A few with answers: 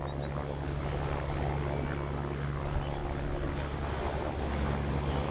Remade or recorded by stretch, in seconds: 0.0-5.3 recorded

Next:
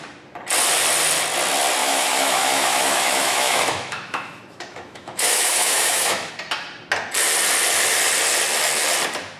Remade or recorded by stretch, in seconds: 0.0-1.8 recorded; 1.8-6.3 remade; 6.3-9.4 recorded